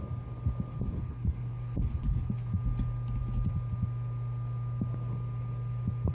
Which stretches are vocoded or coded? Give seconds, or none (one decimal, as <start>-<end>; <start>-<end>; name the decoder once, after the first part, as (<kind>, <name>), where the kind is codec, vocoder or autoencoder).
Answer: 0.7-2.5 (codec, HILCodec)